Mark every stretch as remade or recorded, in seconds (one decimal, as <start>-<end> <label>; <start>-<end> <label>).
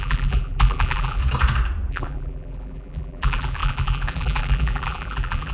0.0-1.2 remade; 1.2-1.9 recorded; 1.9-5.5 remade